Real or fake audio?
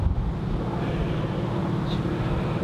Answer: real